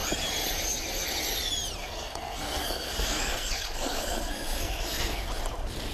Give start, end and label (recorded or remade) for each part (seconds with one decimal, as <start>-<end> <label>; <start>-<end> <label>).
0.0-1.8 recorded; 1.8-5.3 remade; 5.3-5.9 recorded